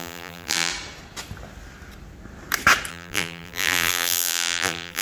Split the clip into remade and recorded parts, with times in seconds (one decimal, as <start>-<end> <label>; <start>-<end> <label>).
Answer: 0.0-0.7 remade; 0.7-2.9 recorded; 2.9-5.0 remade